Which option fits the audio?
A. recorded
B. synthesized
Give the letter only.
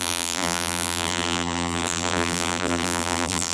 B